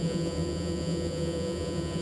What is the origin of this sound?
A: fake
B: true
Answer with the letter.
A